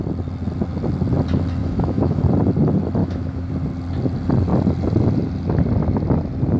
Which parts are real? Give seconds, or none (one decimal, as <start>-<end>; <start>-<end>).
0.0-1.6; 2.2-3.0; 3.5-6.6